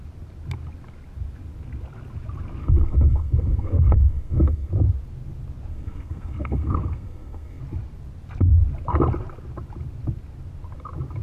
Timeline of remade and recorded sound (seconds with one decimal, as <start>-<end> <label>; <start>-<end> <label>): 0.0-2.6 recorded; 2.6-4.7 remade; 4.7-5.7 recorded; 5.7-7.6 remade; 7.6-11.2 recorded